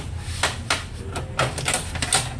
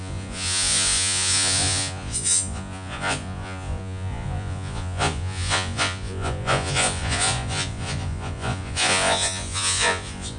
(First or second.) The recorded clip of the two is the first